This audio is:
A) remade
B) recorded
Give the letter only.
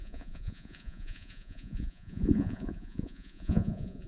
A